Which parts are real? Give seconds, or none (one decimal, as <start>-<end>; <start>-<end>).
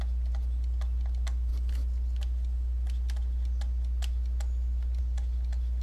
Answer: 0.0-5.8